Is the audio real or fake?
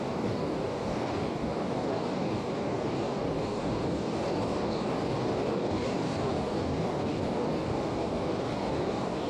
fake